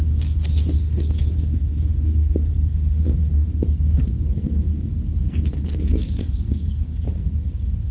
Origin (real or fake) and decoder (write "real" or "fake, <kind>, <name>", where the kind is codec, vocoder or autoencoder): fake, codec, SNAC